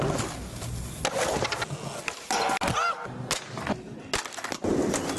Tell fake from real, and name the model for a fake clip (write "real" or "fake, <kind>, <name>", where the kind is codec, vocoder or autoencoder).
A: real